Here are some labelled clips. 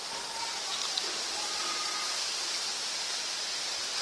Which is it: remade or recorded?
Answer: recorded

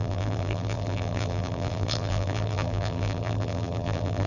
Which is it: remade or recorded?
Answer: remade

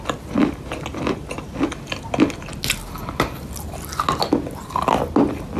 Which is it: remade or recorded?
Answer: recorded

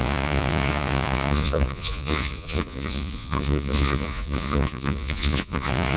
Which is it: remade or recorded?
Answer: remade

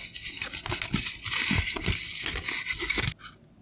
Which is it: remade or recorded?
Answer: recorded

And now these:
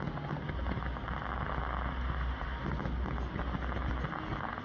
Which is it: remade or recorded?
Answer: recorded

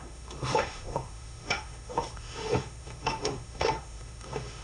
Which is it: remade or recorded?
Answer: remade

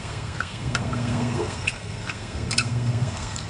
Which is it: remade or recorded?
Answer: remade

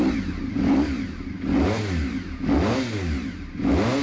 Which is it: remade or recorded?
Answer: recorded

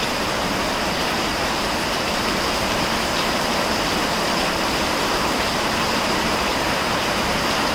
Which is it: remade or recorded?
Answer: remade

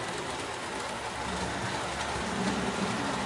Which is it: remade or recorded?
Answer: recorded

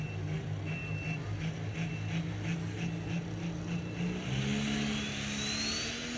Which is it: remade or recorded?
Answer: recorded